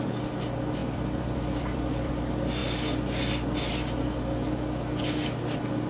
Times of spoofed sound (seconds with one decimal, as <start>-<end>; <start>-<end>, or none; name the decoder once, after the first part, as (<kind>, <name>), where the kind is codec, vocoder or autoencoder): 0.8-2.1 (vocoder, BigVGAN v2)